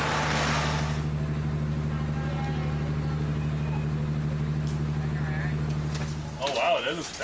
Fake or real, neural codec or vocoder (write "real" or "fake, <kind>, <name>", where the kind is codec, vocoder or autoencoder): real